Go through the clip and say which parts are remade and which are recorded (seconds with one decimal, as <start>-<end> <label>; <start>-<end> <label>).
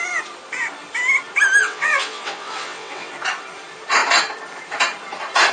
0.0-1.6 recorded; 1.6-3.1 remade; 3.1-5.5 recorded